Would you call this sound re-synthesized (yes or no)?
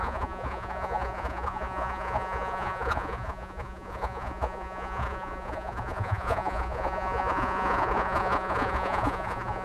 yes